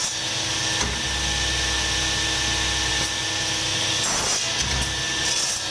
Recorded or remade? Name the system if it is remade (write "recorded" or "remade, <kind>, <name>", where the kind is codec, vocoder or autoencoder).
recorded